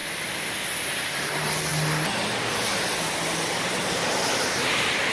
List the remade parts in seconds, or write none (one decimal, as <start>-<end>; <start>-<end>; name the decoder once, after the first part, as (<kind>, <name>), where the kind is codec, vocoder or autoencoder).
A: none